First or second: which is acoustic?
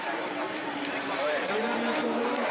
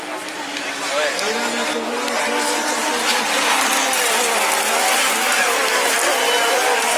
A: second